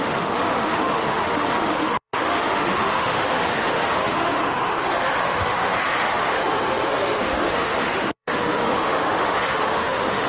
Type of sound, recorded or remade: remade